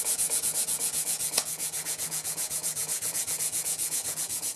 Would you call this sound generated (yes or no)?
yes